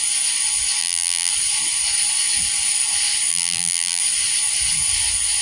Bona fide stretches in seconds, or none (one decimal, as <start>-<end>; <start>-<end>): 0.0-0.8; 1.3-3.3; 4.0-5.4